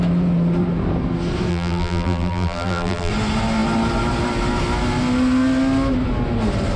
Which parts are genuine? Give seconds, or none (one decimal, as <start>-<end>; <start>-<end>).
0.0-1.5; 3.1-6.8